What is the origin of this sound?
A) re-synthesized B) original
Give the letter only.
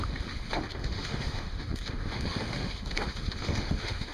A